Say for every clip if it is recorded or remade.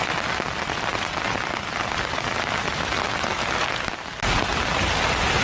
recorded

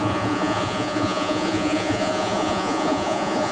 remade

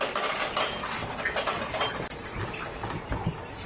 recorded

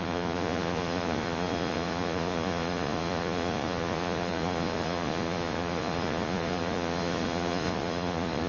remade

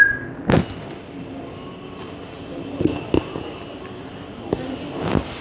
recorded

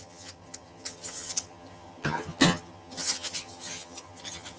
remade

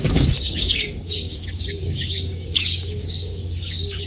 remade